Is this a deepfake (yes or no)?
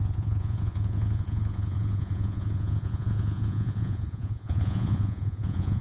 yes